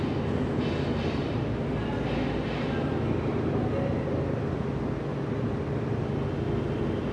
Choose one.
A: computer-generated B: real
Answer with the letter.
B